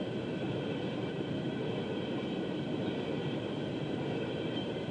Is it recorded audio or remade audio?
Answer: remade